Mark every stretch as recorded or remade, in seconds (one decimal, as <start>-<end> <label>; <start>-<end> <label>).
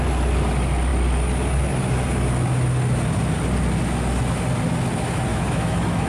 0.0-5.3 recorded; 5.3-6.1 remade